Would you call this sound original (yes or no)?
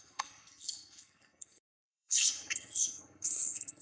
no